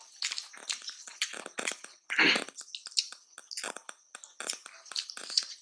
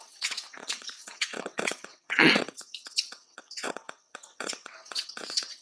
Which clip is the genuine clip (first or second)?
first